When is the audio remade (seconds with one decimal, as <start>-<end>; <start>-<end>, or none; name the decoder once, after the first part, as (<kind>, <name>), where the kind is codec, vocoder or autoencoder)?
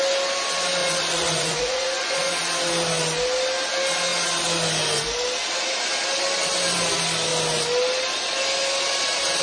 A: 0.8-2.3 (vocoder, Vocos)